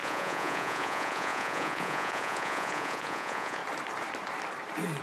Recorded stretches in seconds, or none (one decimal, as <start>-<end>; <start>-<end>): 3.6-5.0